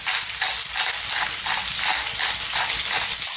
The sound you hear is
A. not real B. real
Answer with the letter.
B